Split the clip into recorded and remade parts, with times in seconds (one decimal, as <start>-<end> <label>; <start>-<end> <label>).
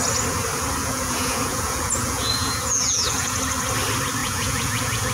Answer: 0.0-0.8 recorded; 0.8-3.4 remade; 3.4-4.2 recorded; 4.2-5.1 remade